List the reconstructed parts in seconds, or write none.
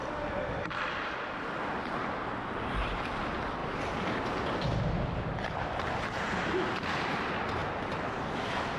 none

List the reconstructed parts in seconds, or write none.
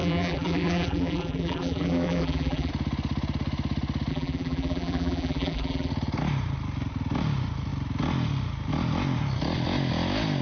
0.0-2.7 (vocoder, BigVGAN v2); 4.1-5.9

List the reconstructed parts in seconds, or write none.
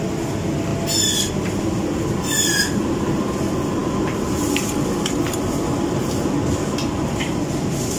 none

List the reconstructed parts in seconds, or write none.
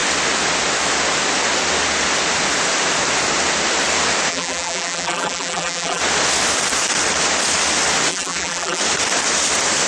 4.3-6.0 (vocoder, BigVGAN v2); 8.1-8.8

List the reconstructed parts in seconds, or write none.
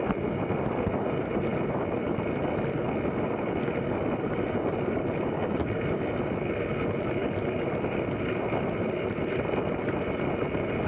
1.5-6.1 (vocoder, BigVGAN v2); 7.2-8.0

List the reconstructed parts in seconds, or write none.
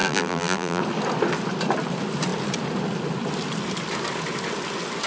0.0-0.8 (vocoder, BigVGAN v2)